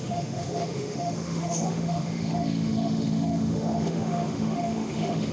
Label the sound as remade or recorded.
remade